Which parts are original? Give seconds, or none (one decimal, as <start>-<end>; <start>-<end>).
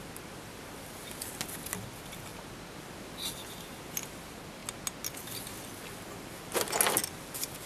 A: 0.0-7.7